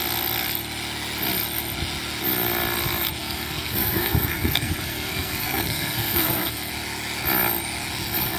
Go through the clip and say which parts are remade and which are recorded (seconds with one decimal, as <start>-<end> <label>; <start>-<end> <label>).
0.0-3.2 recorded; 3.2-6.7 remade; 6.7-8.4 recorded